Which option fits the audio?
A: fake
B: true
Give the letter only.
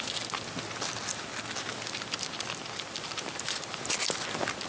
B